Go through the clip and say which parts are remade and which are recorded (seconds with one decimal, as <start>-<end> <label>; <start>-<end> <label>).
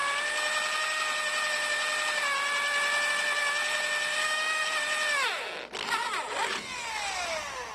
0.0-4.1 recorded; 4.1-4.7 remade; 4.7-7.7 recorded